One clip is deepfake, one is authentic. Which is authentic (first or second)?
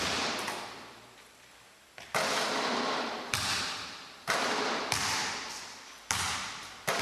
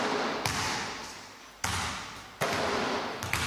second